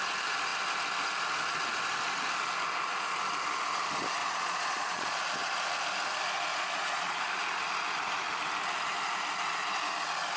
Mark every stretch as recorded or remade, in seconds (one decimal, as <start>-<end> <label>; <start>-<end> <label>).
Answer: 0.0-4.2 recorded; 4.2-5.2 remade; 5.2-6.5 recorded; 6.5-7.2 remade; 7.2-10.4 recorded